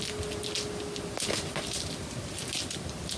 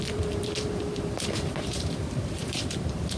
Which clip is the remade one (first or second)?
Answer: second